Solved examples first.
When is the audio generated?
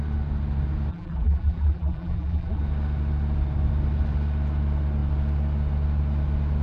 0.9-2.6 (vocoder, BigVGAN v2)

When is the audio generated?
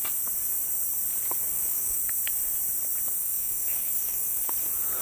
1.5-2.0 (codec, DAC); 3.2-4.5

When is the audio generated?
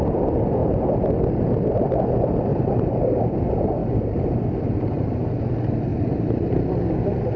2.5-3.2 (vocoder, BigVGAN v2); 3.8-5.3; 5.9-6.7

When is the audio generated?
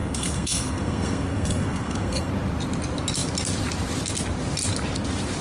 0.0-2.3 (codec, SNAC)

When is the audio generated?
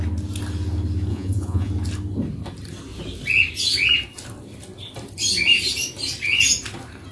1.1-1.7 (vocoder, Vocos)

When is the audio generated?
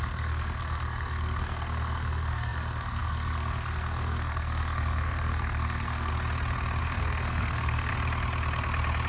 0.0-6.1 (codec, SNAC); 6.8-7.9